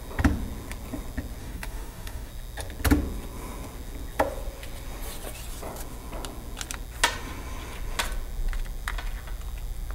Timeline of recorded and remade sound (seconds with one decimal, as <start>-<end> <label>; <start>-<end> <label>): 0.0-1.4 recorded; 1.4-2.3 remade; 2.3-9.9 recorded